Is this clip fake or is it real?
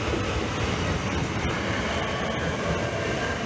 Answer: real